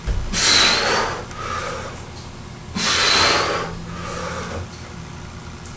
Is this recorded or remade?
recorded